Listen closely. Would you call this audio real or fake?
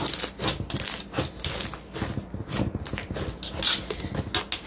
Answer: real